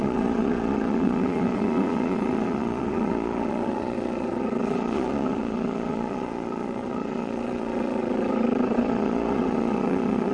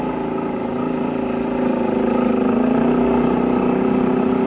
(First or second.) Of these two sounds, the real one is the second